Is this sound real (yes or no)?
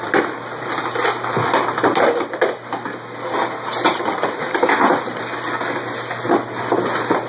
yes